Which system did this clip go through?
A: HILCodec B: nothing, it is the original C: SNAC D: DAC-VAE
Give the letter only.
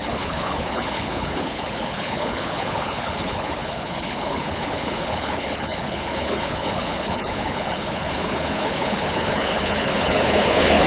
A